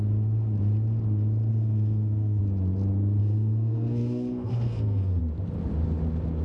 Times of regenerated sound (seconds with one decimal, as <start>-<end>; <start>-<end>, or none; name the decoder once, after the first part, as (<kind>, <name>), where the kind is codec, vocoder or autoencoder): 1.5-2.4 (codec, SNAC); 3.2-5.2